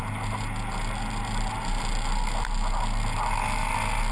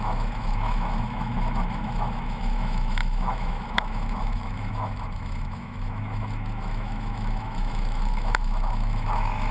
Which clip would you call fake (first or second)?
second